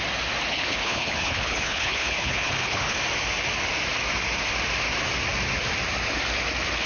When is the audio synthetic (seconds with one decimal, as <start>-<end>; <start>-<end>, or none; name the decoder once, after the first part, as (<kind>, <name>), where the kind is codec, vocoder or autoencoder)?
0.5-3.0 (codec, HILCodec)

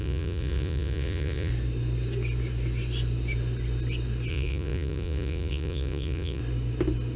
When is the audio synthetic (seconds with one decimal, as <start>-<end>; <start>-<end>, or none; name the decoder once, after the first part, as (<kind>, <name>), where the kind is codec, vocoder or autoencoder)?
0.0-1.5 (vocoder, Vocos); 4.3-6.4

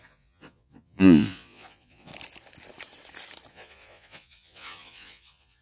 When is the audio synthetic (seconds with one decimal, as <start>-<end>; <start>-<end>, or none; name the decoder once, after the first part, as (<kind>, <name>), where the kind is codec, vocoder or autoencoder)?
0.0-2.1 (vocoder, Vocos); 3.5-5.6

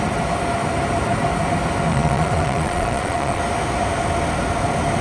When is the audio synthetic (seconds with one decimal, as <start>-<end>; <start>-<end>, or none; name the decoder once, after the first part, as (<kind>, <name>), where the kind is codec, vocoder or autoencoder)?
1.9-3.4 (vocoder, Vocos)

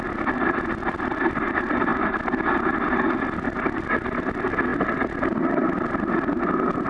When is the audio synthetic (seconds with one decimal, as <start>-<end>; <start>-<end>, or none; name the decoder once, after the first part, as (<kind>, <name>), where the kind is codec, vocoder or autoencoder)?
0.0-4.7 (vocoder, BigVGAN v2); 5.2-6.9

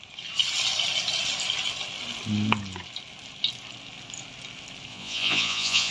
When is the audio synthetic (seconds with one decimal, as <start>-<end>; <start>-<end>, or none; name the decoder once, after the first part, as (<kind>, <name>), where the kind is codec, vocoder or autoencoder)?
4.9-5.9 (vocoder, Vocos)

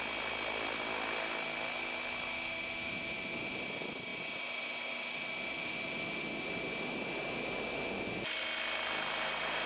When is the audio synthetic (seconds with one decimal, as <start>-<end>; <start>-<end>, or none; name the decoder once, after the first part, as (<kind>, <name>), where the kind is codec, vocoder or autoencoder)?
none